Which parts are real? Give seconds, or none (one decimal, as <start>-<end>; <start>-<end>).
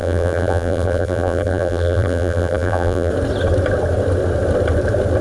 3.1-5.2